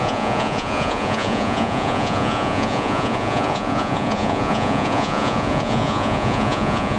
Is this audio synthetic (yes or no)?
yes